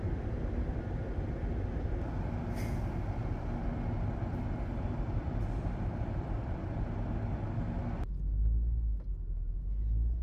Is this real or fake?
real